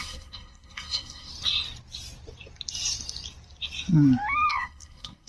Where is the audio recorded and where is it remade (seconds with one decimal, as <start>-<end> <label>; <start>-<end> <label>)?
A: 0.0-1.3 remade; 1.3-4.5 recorded; 4.5-5.3 remade